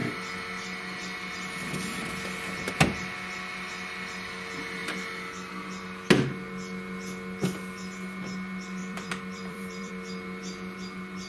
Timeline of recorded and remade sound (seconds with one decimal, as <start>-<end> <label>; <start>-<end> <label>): 0.0-8.8 recorded; 8.8-9.9 remade; 9.9-11.3 recorded